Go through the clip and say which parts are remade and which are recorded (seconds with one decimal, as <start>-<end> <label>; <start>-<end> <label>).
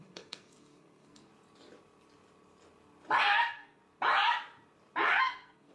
0.0-1.3 remade; 1.3-3.2 recorded; 3.2-3.8 remade; 3.8-5.2 recorded; 5.2-5.7 remade